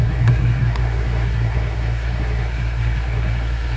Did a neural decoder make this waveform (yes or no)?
yes